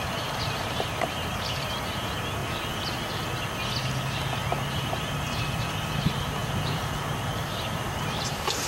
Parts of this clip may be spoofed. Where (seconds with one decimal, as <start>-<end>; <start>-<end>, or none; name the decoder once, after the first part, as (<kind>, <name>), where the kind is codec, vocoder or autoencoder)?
0.0-2.4 (vocoder, BigVGAN v2); 4.7-8.7

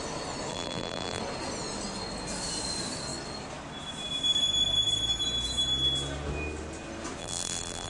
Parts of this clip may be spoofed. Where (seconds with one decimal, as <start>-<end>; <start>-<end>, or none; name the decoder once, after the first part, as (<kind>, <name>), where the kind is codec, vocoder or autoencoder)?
0.5-1.2 (vocoder, BigVGAN v2); 7.2-7.9

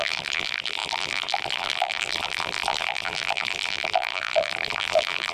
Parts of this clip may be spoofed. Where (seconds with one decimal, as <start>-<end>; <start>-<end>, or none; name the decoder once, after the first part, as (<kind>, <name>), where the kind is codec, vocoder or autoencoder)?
0.0-5.3 (vocoder, BigVGAN v2)

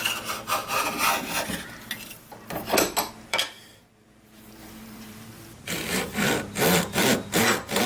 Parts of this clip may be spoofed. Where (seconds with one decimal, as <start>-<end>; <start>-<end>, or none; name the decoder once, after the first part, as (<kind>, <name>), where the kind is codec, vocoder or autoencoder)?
3.3-6.3 (vocoder, BigVGAN v2)

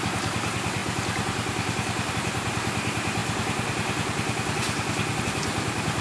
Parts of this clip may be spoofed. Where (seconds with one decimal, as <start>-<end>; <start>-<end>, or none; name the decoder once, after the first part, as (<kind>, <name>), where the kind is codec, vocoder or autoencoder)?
none

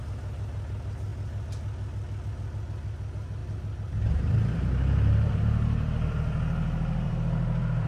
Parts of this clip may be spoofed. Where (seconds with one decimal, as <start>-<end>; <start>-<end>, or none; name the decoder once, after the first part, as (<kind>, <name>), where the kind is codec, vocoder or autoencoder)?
3.4-7.9 (vocoder, BigVGAN v2)